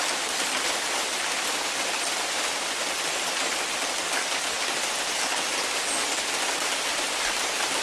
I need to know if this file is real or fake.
real